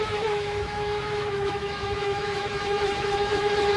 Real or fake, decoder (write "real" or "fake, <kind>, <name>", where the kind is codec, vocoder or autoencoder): fake, autoencoder, DAC-VAE